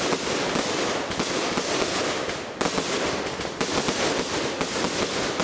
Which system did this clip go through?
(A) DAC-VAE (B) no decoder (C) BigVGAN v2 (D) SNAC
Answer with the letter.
B